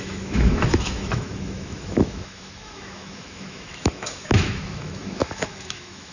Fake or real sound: fake